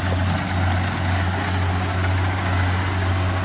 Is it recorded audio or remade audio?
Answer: recorded